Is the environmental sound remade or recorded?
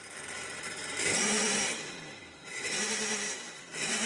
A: remade